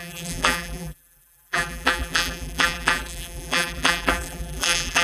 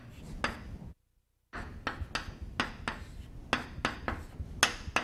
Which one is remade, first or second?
first